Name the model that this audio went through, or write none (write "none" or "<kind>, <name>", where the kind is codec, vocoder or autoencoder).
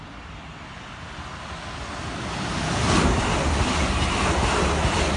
none